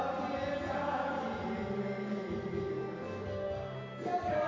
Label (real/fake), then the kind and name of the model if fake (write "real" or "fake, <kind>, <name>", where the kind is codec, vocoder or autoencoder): real